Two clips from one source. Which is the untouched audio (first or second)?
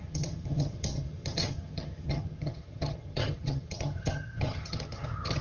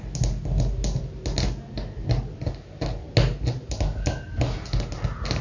second